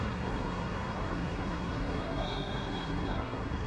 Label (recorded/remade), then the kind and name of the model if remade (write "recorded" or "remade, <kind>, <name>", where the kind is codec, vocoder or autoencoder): remade, codec, SNAC